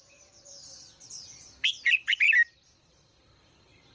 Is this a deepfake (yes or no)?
yes